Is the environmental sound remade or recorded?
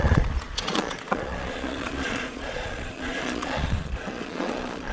remade